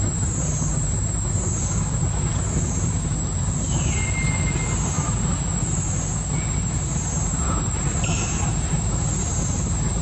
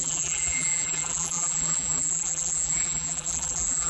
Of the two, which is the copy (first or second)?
second